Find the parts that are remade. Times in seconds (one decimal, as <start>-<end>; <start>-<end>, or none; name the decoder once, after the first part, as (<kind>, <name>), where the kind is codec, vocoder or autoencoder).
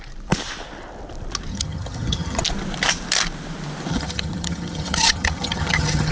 1.5-2.4 (vocoder, HiFi-GAN); 3.9-6.1